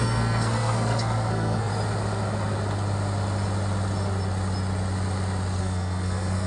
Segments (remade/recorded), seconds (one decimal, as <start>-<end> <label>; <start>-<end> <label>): 0.0-1.7 remade; 1.7-5.6 recorded; 5.6-6.5 remade